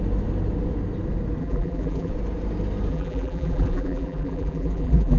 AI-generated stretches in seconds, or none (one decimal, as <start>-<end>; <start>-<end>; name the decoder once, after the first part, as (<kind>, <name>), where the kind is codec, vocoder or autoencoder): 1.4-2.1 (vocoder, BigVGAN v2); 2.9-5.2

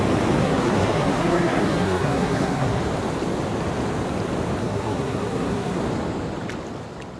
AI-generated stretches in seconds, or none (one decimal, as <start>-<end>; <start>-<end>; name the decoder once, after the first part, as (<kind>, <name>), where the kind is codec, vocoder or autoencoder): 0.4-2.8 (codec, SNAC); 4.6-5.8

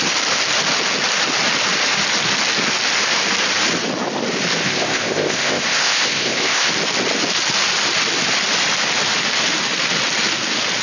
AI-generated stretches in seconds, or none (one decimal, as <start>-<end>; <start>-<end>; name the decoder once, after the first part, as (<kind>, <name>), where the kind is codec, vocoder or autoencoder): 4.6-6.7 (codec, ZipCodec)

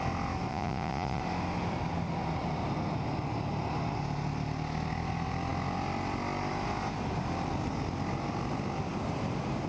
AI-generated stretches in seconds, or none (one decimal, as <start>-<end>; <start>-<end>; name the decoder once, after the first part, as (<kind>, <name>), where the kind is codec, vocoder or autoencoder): 0.5-1.2 (vocoder, Vocos)

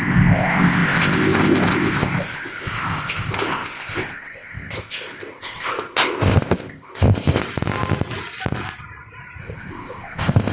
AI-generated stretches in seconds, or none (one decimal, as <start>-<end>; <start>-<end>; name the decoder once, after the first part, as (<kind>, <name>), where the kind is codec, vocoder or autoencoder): 0.0-7.4 (codec, ZipCodec); 9.4-10.5

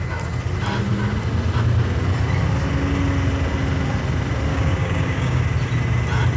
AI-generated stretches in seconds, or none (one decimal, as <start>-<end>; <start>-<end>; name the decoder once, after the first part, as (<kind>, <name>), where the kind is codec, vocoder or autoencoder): 4.5-5.4 (codec, DAC)